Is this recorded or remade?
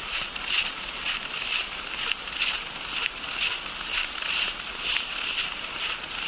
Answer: recorded